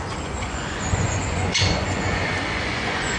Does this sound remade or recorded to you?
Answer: remade